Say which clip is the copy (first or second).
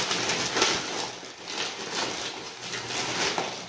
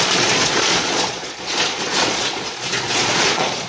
second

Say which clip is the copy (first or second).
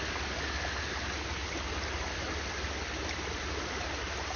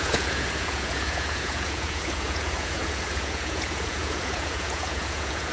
second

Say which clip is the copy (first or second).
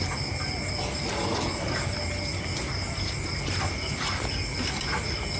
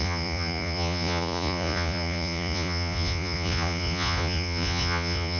second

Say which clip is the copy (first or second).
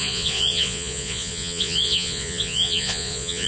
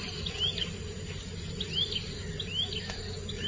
first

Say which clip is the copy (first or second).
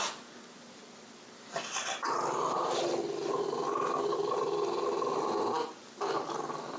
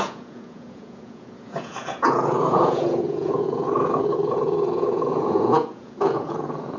second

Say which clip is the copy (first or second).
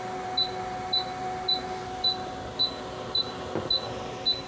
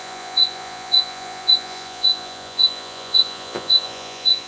second